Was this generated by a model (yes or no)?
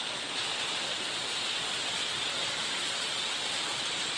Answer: yes